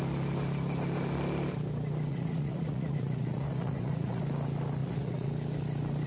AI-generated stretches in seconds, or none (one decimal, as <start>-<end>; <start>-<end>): 2.1-4.2; 4.8-5.3